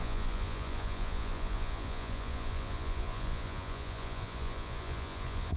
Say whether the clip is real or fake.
fake